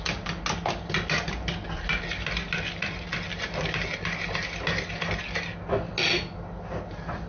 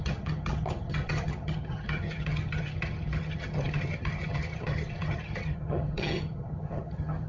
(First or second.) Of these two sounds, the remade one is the second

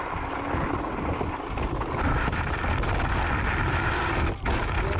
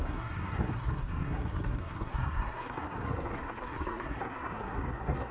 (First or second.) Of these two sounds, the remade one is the second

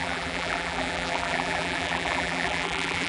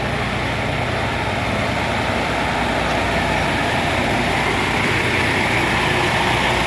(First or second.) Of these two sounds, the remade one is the first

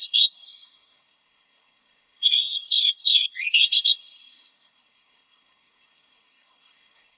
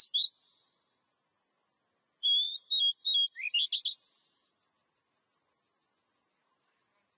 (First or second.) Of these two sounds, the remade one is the first